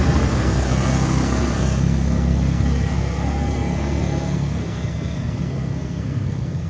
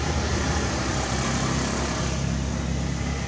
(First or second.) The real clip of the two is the second